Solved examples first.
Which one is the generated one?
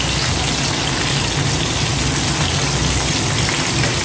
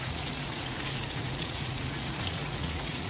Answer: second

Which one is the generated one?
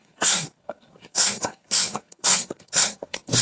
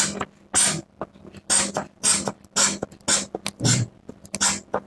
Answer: first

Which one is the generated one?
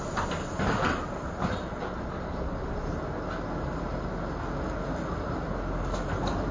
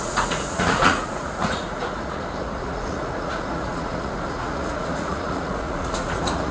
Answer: second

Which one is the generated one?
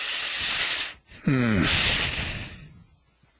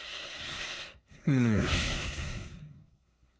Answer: second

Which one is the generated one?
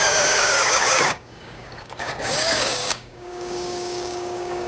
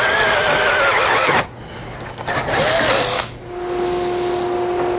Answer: first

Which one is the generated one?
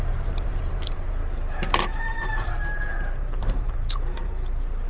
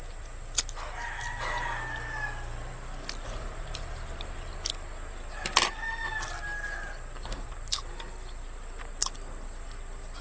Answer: first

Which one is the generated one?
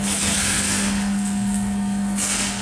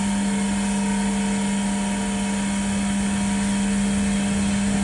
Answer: first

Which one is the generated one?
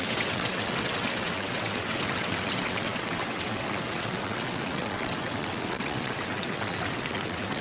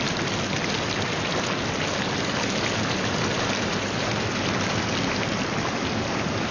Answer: first